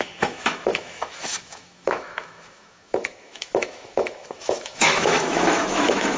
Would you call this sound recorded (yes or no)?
no